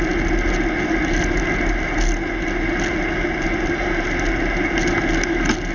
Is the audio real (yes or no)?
yes